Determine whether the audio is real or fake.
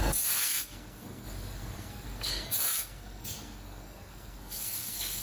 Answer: fake